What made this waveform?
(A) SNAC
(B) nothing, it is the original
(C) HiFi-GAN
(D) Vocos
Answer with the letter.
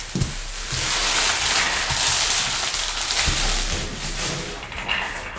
B